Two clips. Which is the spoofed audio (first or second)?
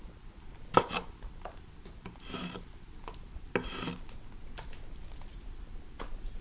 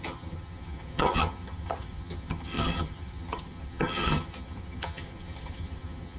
second